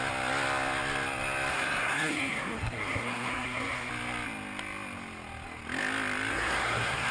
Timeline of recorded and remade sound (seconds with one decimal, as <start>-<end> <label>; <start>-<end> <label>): 0.0-1.5 recorded; 1.5-3.9 remade; 3.9-6.3 recorded; 6.3-7.1 remade